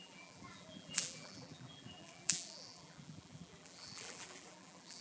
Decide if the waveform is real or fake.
fake